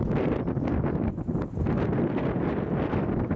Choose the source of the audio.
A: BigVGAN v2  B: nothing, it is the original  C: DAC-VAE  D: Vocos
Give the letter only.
B